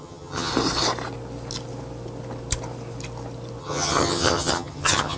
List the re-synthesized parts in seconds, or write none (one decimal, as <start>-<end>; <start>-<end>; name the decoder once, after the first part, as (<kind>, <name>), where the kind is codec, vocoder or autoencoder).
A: 0.0-0.5 (vocoder, HiFi-GAN); 3.6-5.2